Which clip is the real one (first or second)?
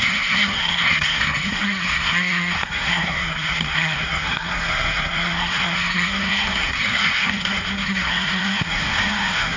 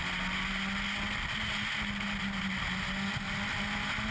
second